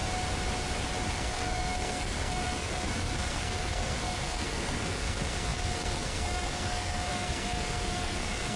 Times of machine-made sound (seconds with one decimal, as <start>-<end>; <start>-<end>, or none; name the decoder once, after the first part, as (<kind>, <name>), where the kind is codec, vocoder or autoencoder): 1.1-8.6 (codec, SNAC)